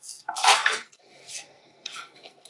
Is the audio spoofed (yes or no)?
yes